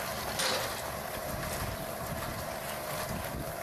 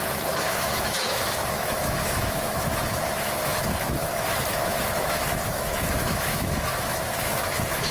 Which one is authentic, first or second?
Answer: first